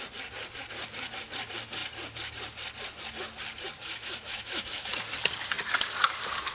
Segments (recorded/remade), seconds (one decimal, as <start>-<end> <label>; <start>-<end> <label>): 0.0-3.8 recorded; 3.8-4.9 remade; 4.9-6.5 recorded